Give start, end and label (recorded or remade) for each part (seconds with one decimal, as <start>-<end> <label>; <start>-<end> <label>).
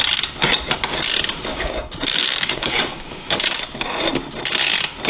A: 0.0-1.5 recorded; 1.5-3.6 remade; 3.6-5.1 recorded